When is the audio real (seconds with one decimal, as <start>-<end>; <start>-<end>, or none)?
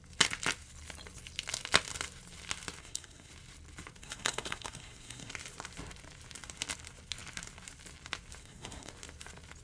0.0-2.8; 3.3-4.0; 5.3-8.4; 8.9-9.6